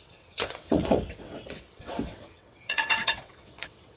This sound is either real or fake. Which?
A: fake